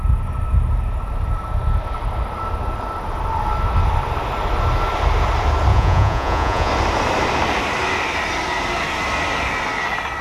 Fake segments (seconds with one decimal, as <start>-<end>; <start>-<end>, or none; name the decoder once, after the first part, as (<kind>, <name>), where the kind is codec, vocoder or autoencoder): 5.7-6.7 (vocoder, Vocos)